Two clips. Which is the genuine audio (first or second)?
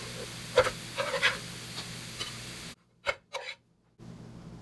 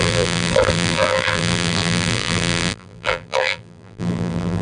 first